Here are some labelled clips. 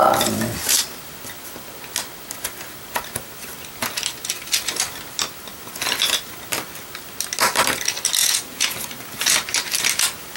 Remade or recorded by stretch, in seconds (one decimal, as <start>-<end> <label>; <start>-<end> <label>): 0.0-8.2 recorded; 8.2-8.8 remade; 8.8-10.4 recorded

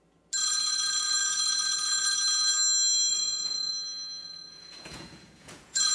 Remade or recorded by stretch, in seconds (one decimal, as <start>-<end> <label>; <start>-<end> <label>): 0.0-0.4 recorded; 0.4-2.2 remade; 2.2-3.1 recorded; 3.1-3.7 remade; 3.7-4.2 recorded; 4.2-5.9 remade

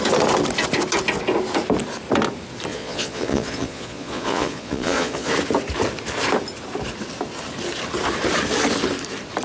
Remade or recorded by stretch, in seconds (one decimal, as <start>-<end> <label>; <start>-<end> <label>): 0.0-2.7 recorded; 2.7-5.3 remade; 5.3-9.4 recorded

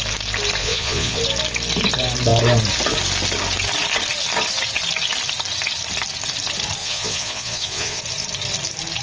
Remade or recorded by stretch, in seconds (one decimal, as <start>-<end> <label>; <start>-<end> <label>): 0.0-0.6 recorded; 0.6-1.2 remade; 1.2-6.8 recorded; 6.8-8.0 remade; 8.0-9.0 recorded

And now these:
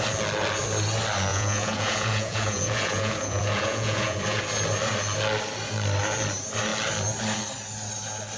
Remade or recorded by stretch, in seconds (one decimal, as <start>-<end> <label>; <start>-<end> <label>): 0.0-1.3 recorded; 1.3-4.4 remade; 4.4-8.4 recorded

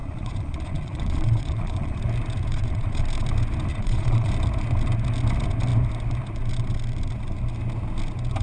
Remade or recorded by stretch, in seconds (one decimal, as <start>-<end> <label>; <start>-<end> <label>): 0.0-2.0 remade; 2.0-2.5 recorded; 2.5-3.0 remade; 3.0-3.7 recorded; 3.7-4.3 remade; 4.3-8.4 recorded